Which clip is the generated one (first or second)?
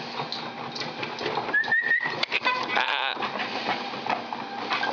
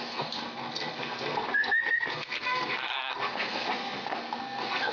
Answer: second